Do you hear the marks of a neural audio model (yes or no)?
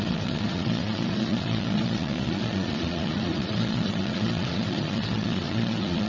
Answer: yes